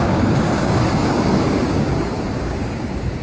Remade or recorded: remade